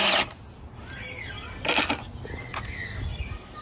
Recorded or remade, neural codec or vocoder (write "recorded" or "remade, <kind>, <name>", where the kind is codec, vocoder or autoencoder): recorded